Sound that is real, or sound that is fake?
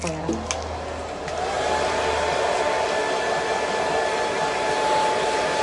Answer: real